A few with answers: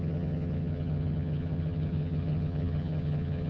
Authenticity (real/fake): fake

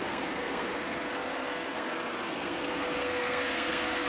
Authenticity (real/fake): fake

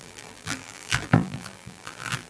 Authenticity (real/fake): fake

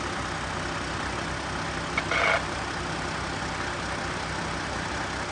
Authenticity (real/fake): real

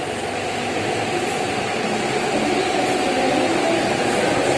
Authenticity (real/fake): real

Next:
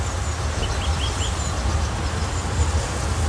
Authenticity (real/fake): real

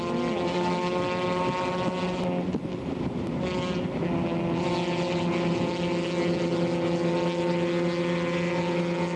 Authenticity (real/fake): real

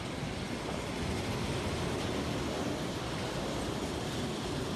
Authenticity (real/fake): real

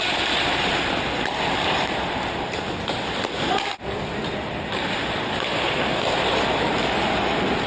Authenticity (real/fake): real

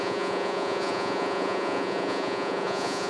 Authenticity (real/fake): fake